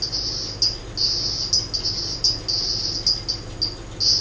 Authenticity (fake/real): real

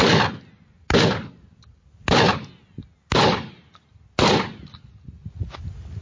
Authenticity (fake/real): real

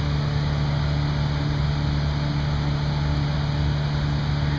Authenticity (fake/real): real